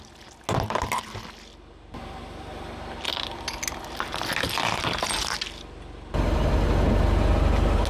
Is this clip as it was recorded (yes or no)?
yes